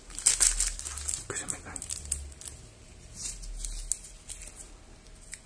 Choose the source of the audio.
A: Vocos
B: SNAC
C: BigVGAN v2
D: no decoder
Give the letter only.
D